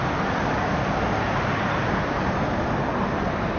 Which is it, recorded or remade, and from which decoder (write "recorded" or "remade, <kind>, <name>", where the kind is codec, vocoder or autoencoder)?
recorded